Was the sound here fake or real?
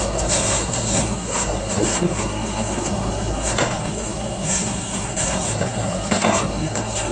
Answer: fake